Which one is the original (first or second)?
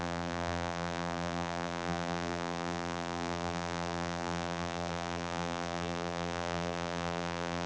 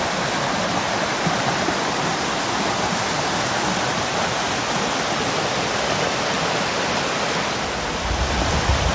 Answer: second